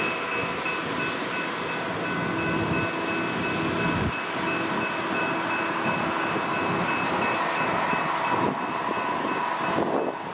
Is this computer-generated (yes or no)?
no